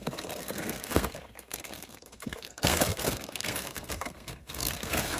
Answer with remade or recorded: remade